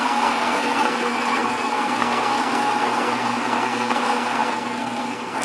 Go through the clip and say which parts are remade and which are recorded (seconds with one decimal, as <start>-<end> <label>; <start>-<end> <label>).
0.0-5.4 remade